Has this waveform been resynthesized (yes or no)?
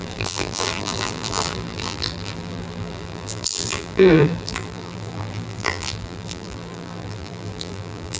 yes